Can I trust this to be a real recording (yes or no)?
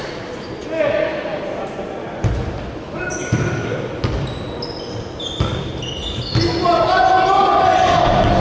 yes